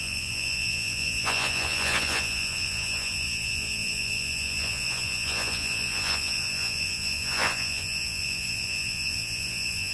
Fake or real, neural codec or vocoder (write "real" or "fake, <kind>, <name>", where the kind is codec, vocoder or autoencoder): fake, vocoder, Vocos